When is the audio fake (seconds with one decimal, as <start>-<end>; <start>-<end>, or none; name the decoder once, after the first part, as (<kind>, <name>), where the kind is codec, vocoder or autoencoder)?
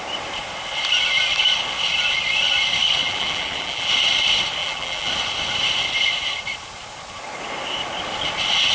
3.0-3.9 (vocoder, BigVGAN v2); 4.6-5.1